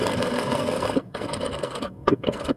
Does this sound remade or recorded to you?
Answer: remade